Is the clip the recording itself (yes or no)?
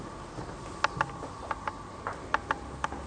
yes